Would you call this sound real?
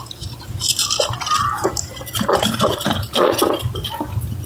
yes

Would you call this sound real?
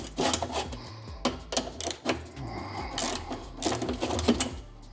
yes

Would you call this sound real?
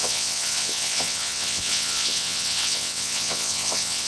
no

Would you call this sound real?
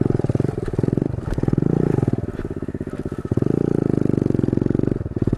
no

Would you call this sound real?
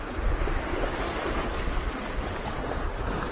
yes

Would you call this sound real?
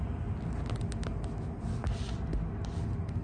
yes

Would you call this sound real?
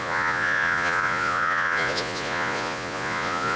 no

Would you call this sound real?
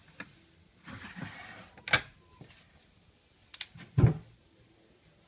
yes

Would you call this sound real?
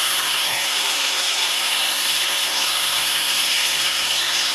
no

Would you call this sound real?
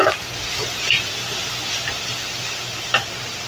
yes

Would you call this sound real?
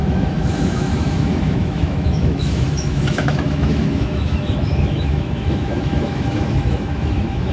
no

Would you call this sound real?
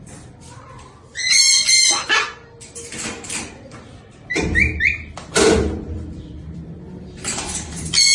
no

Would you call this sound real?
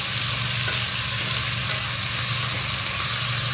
yes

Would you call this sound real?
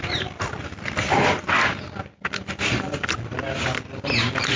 no